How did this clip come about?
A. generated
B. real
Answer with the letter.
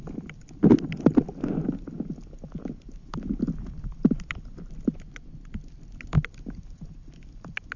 B